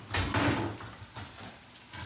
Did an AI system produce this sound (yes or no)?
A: no